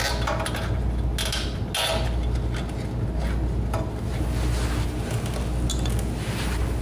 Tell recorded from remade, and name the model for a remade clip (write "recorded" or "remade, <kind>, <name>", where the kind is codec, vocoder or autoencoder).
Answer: recorded